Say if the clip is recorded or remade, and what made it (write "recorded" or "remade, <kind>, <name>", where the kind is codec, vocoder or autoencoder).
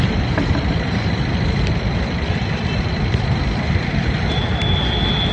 recorded